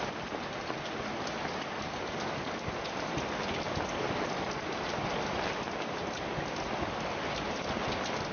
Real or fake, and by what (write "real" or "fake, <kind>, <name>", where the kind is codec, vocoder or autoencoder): real